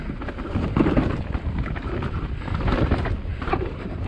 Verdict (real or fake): real